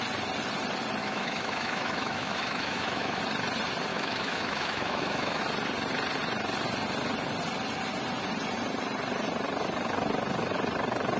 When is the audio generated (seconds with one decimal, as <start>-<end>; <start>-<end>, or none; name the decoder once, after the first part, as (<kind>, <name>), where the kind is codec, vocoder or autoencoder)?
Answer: 1.0-3.2 (autoencoder, DAC-VAE); 3.9-5.4